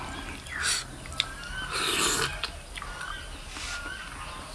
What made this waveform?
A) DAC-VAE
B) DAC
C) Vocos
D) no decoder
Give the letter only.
D